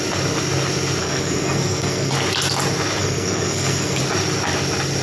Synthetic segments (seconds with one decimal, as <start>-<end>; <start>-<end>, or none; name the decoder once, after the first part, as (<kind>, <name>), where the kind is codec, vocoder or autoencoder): 1.0-2.1 (codec, SNAC); 3.0-4.0